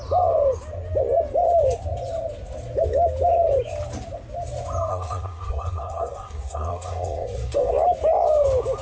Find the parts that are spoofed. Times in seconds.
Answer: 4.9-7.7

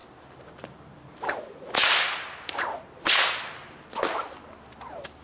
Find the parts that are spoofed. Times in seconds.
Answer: none

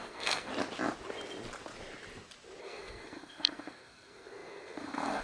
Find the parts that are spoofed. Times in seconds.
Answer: 0.0-0.5; 2.6-5.2

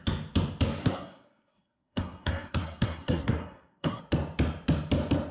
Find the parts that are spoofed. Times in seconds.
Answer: 0.8-4.0

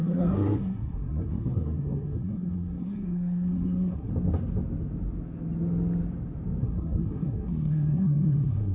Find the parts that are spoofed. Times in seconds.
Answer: 0.0-4.1; 6.6-8.7

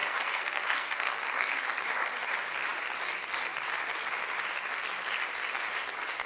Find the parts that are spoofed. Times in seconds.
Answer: 0.0-1.5

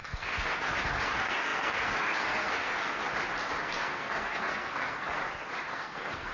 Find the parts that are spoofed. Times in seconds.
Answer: 0.0-3.0; 3.6-5.2; 5.7-6.3

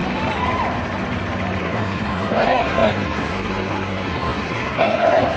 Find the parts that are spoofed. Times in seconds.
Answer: 1.6-5.4